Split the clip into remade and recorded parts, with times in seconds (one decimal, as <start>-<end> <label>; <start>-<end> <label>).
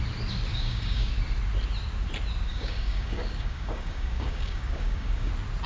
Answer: 0.0-0.5 recorded; 0.5-1.1 remade; 1.1-2.5 recorded; 2.5-5.3 remade; 5.3-5.7 recorded